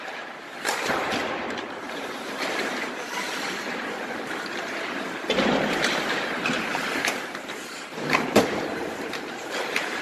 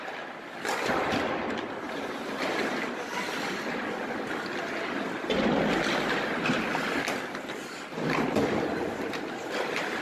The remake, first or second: first